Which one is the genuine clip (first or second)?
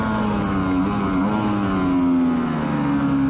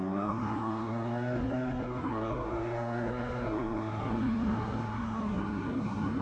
first